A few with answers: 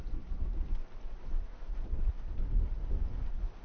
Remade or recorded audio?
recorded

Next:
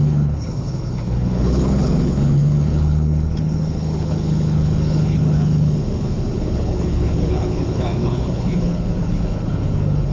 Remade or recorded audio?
remade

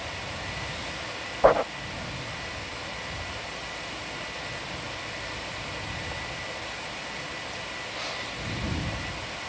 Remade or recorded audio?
recorded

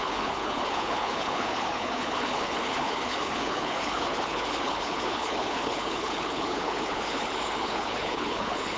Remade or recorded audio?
remade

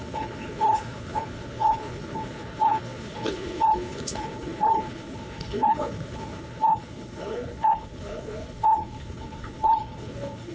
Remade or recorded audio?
remade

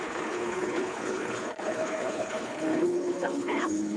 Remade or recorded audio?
remade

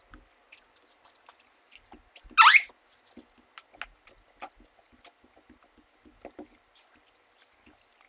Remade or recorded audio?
recorded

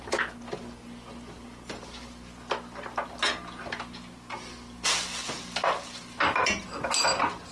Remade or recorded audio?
recorded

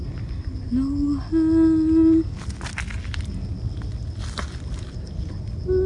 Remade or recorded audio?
recorded